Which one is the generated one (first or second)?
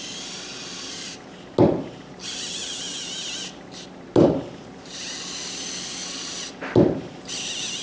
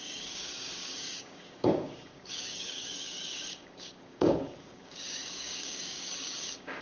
second